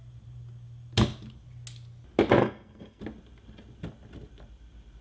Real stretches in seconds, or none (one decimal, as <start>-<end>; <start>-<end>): 0.0-2.4; 3.0-5.0